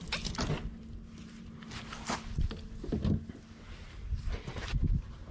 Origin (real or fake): real